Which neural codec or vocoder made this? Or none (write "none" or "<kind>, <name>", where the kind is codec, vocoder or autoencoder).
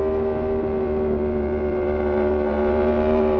vocoder, BigVGAN v2